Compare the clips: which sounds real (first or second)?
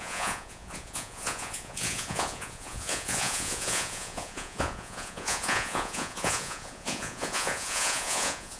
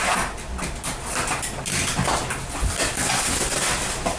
second